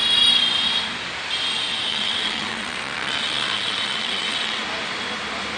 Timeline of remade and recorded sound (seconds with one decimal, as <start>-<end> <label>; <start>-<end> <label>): 0.0-1.9 recorded; 1.9-4.6 remade; 4.6-5.6 recorded